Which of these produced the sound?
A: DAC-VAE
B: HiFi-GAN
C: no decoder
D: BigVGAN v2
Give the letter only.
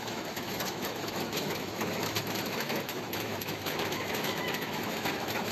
A